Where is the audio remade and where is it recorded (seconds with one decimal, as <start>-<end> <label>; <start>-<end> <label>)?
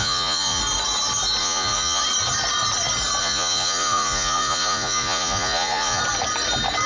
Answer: 0.0-0.6 remade; 0.6-1.4 recorded; 1.4-2.0 remade; 2.0-3.2 recorded; 3.2-6.0 remade; 6.0-6.9 recorded